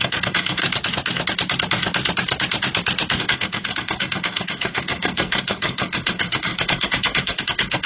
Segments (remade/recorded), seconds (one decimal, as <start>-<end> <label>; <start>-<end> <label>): 0.0-0.6 remade; 0.6-3.2 recorded; 3.2-7.9 remade